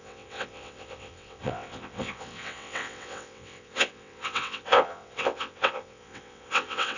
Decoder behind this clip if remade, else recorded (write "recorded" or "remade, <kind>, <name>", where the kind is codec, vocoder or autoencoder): remade, vocoder, WaveNeXt